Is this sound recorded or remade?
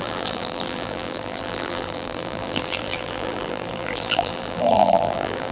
remade